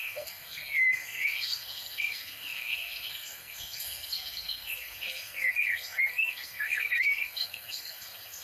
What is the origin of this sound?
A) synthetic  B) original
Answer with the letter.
A